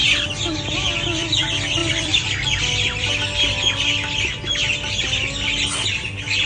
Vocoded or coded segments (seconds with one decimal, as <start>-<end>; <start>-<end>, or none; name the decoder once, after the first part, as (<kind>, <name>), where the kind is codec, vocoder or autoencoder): 1.8-3.1 (vocoder, BigVGAN v2)

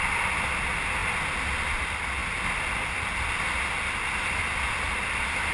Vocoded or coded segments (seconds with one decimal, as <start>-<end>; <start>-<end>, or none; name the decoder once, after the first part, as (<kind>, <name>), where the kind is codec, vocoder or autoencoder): none

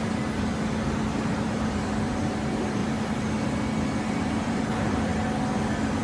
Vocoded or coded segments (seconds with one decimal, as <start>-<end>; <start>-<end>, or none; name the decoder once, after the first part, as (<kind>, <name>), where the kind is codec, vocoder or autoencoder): 0.0-0.5 (vocoder, BigVGAN v2); 1.4-2.8; 4.1-5.1

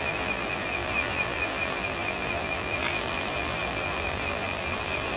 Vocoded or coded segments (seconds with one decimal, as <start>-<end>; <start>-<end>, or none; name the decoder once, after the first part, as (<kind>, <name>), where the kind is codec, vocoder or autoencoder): 0.0-5.2 (vocoder, BigVGAN v2)

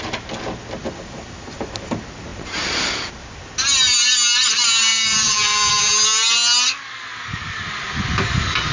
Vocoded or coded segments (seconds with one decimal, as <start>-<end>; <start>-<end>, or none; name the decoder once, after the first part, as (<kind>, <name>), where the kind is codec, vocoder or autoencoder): 0.8-1.7 (vocoder, BigVGAN v2); 4.9-5.7

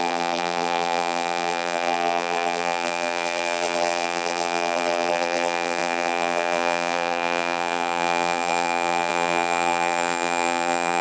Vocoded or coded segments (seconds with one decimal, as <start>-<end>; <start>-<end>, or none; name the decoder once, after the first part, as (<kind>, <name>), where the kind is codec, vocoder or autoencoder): 0.0-11.0 (vocoder, BigVGAN v2)